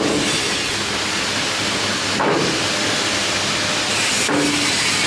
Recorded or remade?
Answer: recorded